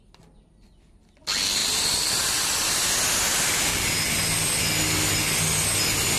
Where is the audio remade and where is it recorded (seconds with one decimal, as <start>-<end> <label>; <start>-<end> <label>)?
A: 0.0-3.7 recorded; 3.7-4.6 remade; 4.6-6.2 recorded